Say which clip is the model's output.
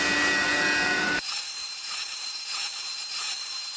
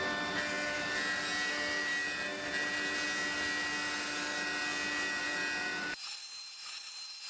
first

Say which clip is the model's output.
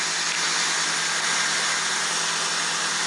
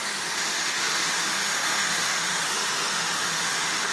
second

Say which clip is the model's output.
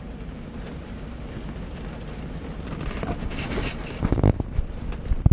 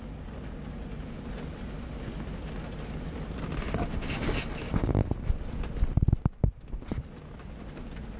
first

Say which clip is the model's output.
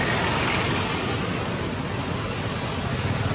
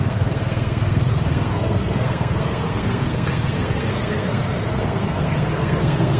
second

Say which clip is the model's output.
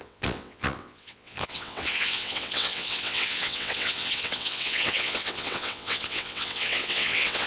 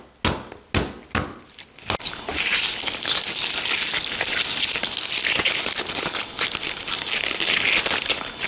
first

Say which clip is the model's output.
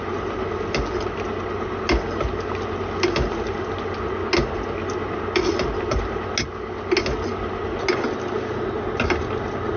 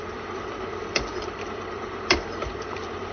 second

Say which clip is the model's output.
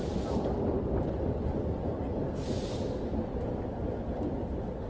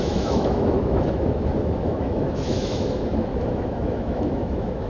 second